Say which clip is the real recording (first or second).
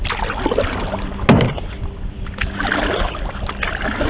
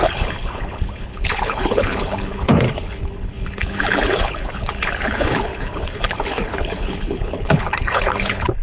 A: first